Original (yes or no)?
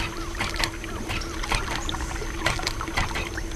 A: yes